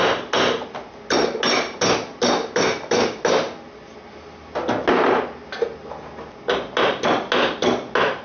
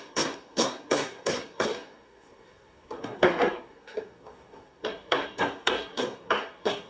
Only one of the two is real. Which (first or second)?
first